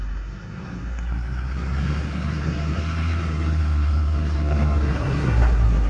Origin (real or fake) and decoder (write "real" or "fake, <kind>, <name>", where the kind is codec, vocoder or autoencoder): fake, codec, SNAC